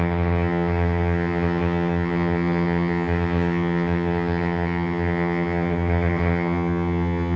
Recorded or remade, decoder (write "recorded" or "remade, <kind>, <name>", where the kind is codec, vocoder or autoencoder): remade, vocoder, HiFi-GAN